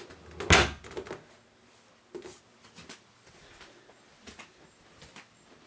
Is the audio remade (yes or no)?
no